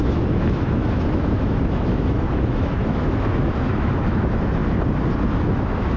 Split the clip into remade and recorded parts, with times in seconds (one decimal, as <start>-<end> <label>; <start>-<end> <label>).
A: 0.0-4.6 remade; 4.6-5.3 recorded; 5.3-6.0 remade

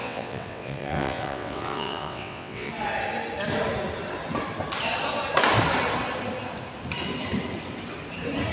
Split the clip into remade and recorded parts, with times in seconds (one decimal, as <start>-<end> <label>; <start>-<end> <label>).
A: 0.0-2.7 remade; 2.7-8.5 recorded

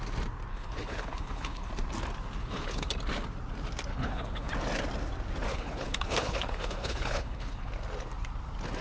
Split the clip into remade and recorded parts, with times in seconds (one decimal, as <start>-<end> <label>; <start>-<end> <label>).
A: 0.0-0.5 recorded; 0.5-1.7 remade; 1.7-2.4 recorded; 2.4-2.9 remade; 2.9-3.9 recorded; 3.9-4.5 remade; 4.5-5.5 recorded; 5.5-7.7 remade; 7.7-8.8 recorded

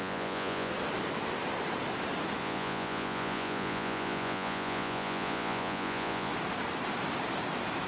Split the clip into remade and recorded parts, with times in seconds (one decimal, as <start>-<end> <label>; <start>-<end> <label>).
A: 0.0-0.7 remade; 0.7-2.4 recorded; 2.4-6.3 remade; 6.3-7.9 recorded

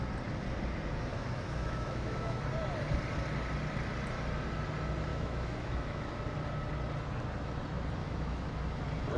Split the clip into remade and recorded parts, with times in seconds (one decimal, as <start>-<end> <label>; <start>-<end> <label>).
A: 0.0-1.1 recorded; 1.1-2.4 remade; 2.4-5.1 recorded; 5.1-6.1 remade; 6.1-8.0 recorded; 8.0-8.5 remade; 8.5-9.2 recorded

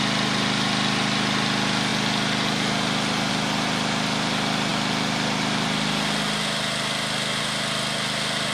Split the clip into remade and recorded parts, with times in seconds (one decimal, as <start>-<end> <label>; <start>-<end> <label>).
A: 0.0-8.5 recorded

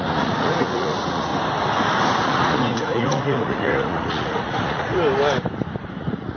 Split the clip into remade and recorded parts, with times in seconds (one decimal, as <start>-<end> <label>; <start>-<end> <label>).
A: 0.0-1.3 remade; 1.3-2.1 recorded; 2.1-4.9 remade; 4.9-6.0 recorded; 6.0-6.4 remade